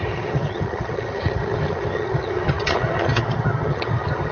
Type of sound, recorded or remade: remade